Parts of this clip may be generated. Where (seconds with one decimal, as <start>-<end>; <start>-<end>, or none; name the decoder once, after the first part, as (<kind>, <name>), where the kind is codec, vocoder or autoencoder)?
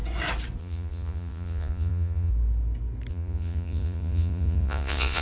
0.6-2.3 (vocoder, Vocos); 3.1-5.2